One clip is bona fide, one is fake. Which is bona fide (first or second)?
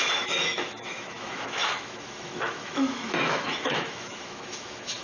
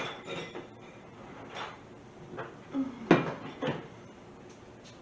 second